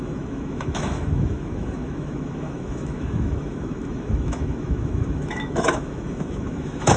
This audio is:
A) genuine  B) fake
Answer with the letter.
B